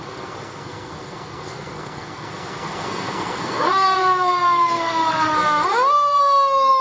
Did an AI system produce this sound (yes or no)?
yes